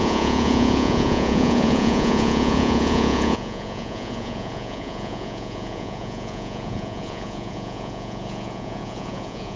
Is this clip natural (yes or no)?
no